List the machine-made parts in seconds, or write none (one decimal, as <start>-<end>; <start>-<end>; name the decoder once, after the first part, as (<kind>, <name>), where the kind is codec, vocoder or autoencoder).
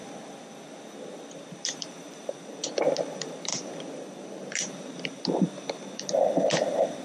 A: 1.3-7.0 (vocoder, BigVGAN v2)